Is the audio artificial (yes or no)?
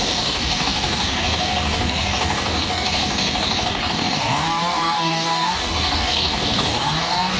yes